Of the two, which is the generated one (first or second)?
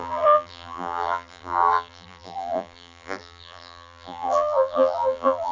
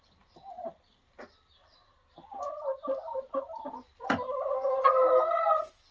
first